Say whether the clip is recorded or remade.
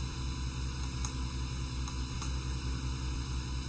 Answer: recorded